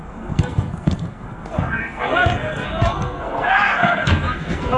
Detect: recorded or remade remade